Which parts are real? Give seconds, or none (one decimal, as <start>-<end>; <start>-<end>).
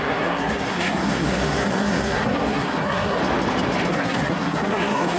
3.2-3.9